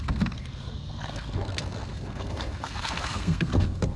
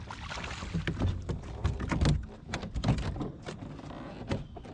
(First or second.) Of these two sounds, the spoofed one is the first